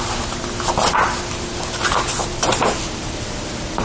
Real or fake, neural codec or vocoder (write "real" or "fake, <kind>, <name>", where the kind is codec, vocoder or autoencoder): real